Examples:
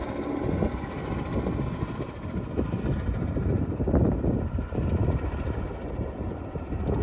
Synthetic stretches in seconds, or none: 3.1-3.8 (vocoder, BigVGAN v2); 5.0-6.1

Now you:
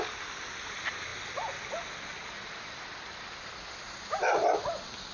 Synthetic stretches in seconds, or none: none

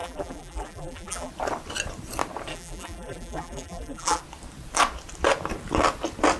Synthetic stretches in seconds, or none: 0.0-1.3 (vocoder, BigVGAN v2); 2.5-4.2

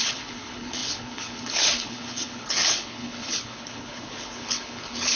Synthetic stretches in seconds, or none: 0.0-5.2 (codec, HILCodec)

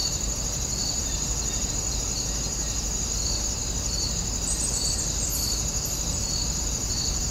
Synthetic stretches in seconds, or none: 0.0-1.7 (vocoder, BigVGAN v2)